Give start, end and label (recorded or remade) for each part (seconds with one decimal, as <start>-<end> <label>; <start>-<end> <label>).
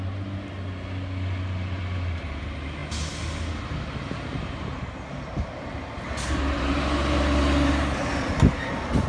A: 0.0-9.1 recorded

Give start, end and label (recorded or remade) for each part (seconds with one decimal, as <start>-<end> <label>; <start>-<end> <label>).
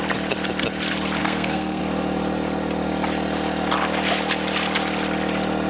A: 0.0-1.2 recorded; 1.2-1.8 remade; 1.8-5.7 recorded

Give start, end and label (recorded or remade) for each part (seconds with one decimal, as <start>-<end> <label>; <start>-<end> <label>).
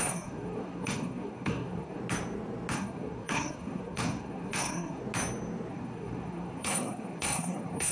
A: 0.0-2.0 remade; 2.0-2.7 recorded; 2.7-5.0 remade; 5.0-5.7 recorded; 5.7-7.9 remade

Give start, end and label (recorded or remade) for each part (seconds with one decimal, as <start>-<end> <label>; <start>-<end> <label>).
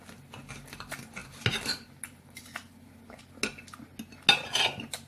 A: 0.0-5.1 recorded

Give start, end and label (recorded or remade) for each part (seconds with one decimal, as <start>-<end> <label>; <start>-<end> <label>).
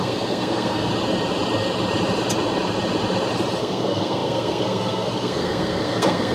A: 0.0-0.9 remade; 0.9-3.6 recorded; 3.6-6.3 remade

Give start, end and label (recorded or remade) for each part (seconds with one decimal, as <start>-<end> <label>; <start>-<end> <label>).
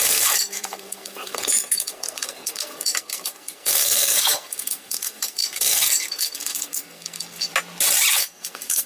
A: 0.0-7.5 remade; 7.5-8.1 recorded; 8.1-8.9 remade